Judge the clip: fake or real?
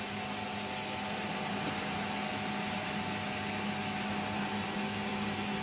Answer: real